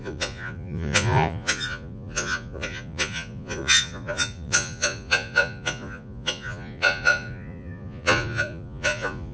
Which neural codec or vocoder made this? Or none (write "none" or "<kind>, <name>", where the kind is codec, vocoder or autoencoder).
vocoder, Vocos